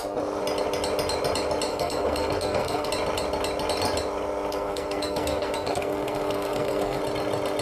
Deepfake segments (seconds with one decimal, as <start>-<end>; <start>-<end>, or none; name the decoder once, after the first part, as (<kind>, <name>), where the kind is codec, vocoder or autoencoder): 1.7-2.9 (codec, SNAC); 4.5-7.0